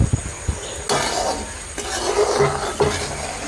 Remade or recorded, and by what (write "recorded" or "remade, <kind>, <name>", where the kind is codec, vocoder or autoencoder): recorded